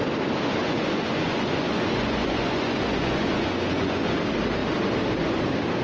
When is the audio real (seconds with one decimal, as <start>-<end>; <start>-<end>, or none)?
0.0-0.6; 4.1-5.8